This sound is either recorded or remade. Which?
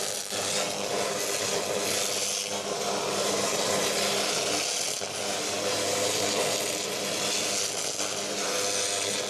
recorded